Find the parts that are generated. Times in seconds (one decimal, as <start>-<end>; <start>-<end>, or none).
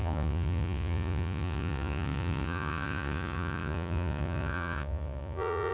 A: 0.0-5.7